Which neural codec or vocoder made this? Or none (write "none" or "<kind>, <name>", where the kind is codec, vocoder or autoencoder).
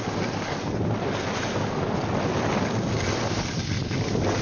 none